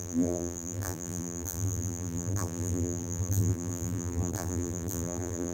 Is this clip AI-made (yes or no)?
yes